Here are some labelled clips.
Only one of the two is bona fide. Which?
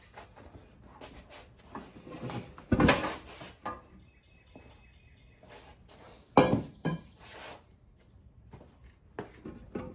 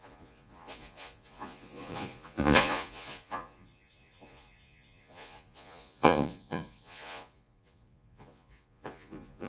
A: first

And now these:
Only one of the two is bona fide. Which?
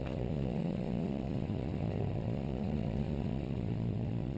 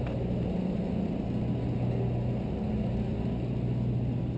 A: second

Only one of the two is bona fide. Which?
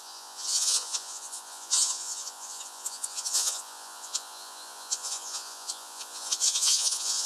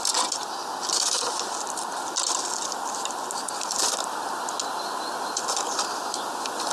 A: second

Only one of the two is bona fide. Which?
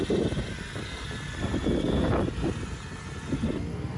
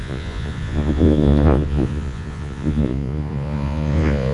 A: first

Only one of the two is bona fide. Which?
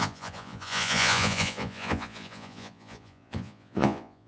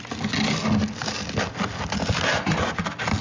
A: second